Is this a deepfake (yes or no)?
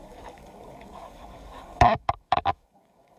yes